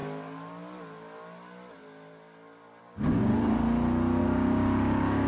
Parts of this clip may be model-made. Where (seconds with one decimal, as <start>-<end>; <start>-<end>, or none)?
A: 2.8-3.3; 4.2-5.3